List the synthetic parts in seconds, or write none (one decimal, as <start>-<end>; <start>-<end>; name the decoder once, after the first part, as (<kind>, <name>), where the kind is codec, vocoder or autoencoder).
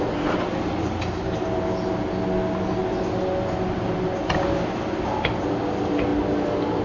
none